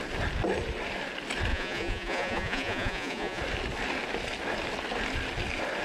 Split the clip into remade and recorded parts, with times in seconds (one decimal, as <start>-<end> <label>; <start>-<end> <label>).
0.0-1.5 recorded; 1.5-3.4 remade; 3.4-5.8 recorded

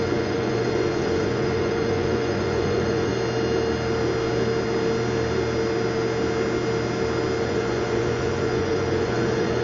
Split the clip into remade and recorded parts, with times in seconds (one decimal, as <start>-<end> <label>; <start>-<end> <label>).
0.0-3.1 remade; 3.1-7.4 recorded; 7.4-9.6 remade

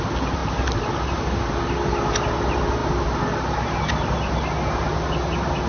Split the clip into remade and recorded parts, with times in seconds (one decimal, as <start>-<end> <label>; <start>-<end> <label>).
0.0-5.7 recorded

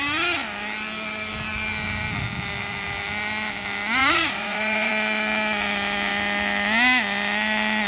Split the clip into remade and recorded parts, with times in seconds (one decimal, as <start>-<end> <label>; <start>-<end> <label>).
0.0-4.0 recorded; 4.0-4.9 remade; 4.9-7.9 recorded

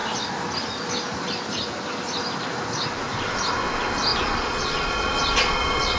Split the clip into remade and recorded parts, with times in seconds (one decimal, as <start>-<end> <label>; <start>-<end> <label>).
0.0-4.1 recorded; 4.1-6.0 remade

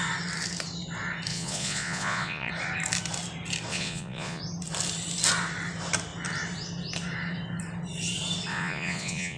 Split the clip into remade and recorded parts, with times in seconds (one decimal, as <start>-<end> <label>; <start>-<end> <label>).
0.0-1.3 recorded; 1.3-2.5 remade; 2.5-3.7 recorded; 3.7-4.4 remade; 4.4-8.5 recorded; 8.5-9.4 remade

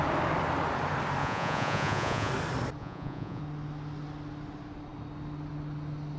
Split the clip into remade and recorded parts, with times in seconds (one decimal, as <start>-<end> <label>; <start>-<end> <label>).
0.0-1.2 recorded; 1.2-2.3 remade; 2.3-2.8 recorded; 2.8-3.4 remade; 3.4-6.2 recorded

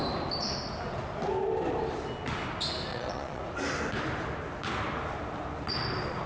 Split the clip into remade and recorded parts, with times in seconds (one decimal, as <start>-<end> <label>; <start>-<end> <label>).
0.0-2.9 recorded; 2.9-3.4 remade; 3.4-6.3 recorded